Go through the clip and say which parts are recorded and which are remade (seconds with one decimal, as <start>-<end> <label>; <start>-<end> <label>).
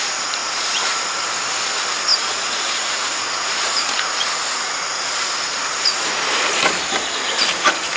0.0-0.4 recorded; 0.4-1.0 remade; 1.0-2.1 recorded; 2.1-6.6 remade; 6.6-8.0 recorded